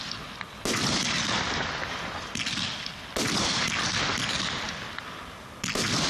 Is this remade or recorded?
recorded